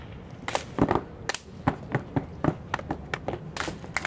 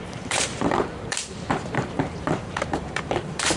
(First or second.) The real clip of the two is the first